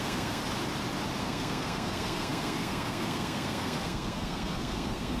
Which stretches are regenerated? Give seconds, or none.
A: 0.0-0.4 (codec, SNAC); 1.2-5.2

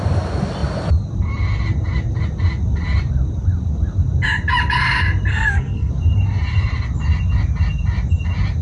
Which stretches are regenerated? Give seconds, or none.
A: 5.3-5.9 (codec, SNAC)